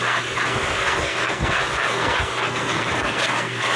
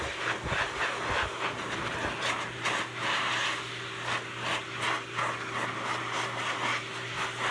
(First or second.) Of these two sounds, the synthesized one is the first